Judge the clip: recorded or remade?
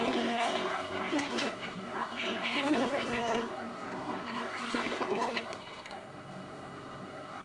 remade